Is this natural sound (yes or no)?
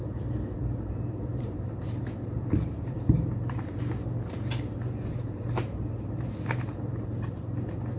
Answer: no